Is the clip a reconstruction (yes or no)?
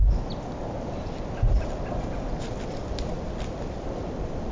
no